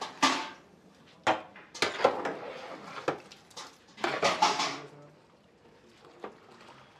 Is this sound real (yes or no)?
yes